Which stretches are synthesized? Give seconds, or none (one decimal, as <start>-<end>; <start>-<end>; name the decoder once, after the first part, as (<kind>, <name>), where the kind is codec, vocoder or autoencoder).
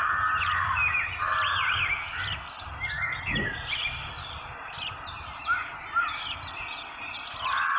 none